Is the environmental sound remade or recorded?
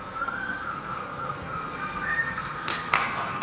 remade